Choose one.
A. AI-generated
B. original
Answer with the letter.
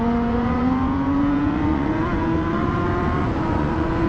A